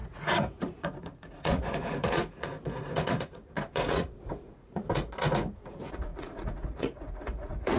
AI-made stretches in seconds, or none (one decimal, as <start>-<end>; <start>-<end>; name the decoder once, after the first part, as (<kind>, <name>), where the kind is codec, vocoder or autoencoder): 0.0-7.8 (vocoder, Vocos)